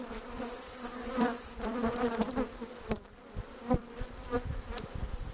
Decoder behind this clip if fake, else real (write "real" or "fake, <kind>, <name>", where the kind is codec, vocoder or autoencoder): fake, vocoder, BigVGAN v2